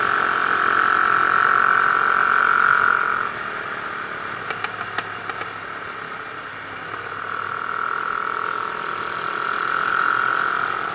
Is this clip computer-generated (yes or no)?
no